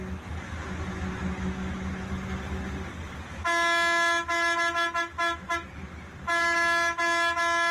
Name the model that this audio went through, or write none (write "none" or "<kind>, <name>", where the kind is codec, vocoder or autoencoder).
none